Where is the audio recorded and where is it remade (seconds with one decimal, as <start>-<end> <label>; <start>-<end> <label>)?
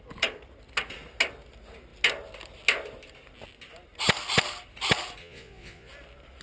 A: 0.0-5.2 recorded; 5.2-5.9 remade; 5.9-6.4 recorded